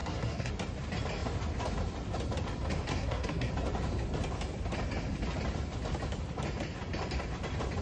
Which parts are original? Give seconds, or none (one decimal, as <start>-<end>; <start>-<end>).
0.5-2.9; 3.5-7.8